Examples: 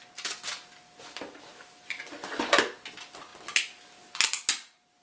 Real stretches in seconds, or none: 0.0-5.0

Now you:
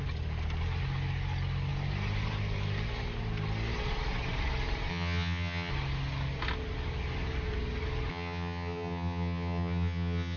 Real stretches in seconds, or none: 0.0-4.9; 5.7-8.1